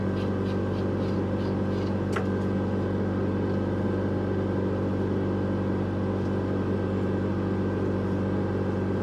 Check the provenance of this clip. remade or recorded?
recorded